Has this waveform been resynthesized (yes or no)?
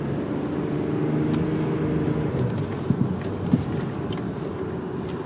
no